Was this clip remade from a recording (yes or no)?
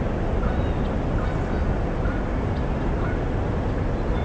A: no